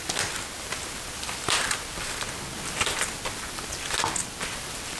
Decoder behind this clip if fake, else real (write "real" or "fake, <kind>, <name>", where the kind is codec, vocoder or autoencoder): real